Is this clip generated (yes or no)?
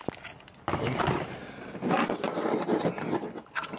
no